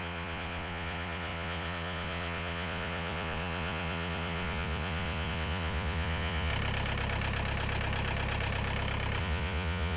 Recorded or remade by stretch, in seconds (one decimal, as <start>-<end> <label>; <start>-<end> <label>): 0.0-6.5 remade; 6.5-9.2 recorded; 9.2-10.0 remade